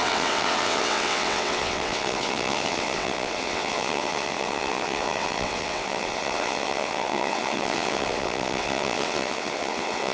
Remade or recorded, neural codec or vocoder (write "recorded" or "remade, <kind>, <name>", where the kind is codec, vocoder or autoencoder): remade, vocoder, WaveNeXt